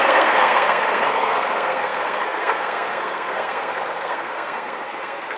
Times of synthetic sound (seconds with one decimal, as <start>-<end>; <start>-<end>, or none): 0.0-5.4